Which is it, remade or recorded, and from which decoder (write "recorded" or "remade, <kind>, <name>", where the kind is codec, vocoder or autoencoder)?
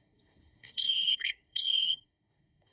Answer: remade, codec, SNAC